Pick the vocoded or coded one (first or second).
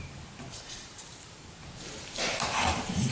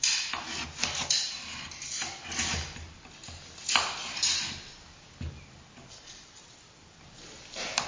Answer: first